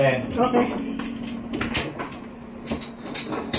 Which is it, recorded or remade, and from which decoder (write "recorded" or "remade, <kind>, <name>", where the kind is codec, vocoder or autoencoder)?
recorded